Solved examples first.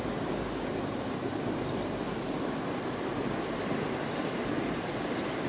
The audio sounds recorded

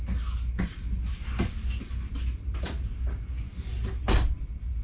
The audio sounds recorded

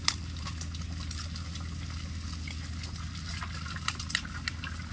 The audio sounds recorded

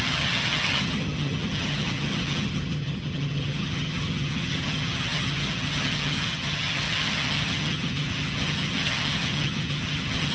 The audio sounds remade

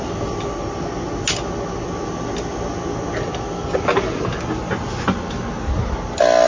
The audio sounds recorded